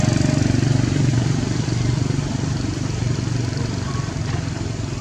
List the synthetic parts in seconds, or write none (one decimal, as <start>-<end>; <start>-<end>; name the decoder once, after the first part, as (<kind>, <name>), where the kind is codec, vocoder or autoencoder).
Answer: 1.1-4.1 (vocoder, BigVGAN v2)